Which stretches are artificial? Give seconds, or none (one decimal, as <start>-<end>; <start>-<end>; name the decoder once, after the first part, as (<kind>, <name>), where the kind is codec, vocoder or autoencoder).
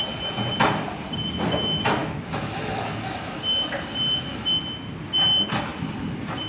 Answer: 2.0-3.4 (autoencoder, DAC-VAE)